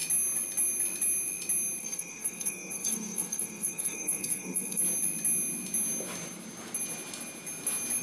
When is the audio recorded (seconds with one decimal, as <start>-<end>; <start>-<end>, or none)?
0.0-1.8; 4.8-8.0